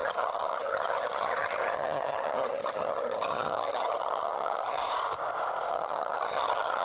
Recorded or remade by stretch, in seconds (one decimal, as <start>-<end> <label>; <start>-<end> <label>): 0.0-4.8 remade; 4.8-5.7 recorded; 5.7-6.8 remade